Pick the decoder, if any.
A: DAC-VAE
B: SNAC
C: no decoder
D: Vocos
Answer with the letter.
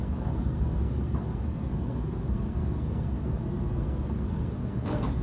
B